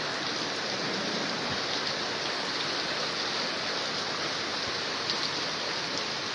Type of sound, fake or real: real